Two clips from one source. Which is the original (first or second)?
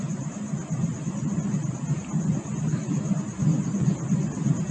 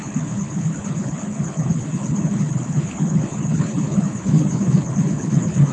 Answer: first